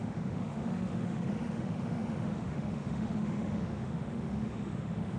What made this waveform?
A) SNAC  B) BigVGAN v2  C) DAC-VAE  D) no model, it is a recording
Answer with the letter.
C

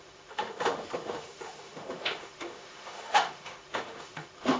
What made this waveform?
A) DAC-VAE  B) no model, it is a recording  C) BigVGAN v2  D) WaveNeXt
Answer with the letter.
A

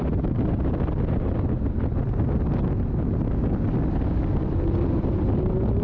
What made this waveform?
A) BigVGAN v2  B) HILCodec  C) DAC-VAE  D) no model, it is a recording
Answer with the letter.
D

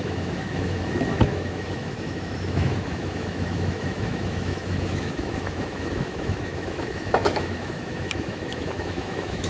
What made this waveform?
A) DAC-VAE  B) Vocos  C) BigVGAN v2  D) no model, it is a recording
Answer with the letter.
A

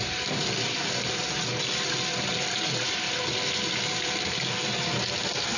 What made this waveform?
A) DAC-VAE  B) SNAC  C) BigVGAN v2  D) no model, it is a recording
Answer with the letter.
D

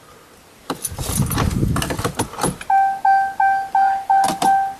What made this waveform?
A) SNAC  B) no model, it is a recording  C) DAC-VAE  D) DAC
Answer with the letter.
B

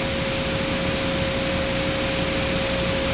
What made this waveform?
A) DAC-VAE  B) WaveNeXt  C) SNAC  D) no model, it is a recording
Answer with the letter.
D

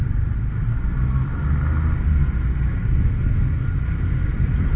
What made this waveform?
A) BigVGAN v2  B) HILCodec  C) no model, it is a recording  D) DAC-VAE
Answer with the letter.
C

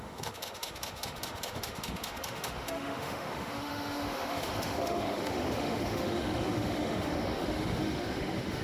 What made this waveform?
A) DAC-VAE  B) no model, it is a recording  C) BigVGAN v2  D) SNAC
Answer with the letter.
A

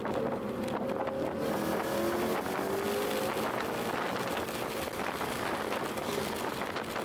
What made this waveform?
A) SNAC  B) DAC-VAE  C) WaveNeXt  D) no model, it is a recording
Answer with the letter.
D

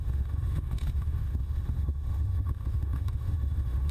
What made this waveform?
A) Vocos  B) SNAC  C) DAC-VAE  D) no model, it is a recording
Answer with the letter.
C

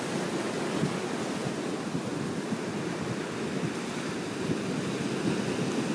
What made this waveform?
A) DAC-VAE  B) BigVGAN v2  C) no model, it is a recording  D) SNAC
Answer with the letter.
C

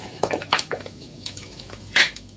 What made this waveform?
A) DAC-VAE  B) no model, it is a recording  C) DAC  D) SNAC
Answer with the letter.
A